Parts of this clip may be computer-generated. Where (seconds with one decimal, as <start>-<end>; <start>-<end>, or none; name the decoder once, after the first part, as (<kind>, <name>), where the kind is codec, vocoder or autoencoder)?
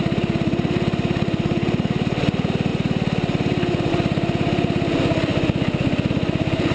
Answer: 0.0-6.7 (vocoder, BigVGAN v2)